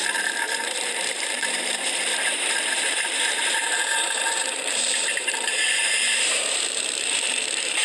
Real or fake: fake